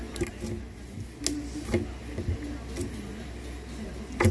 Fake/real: real